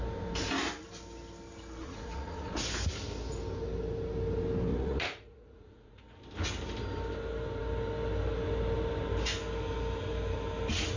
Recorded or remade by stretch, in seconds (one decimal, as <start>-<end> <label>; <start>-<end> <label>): 0.0-1.8 recorded; 1.8-2.5 remade; 2.5-4.7 recorded; 4.7-6.0 remade; 6.0-11.0 recorded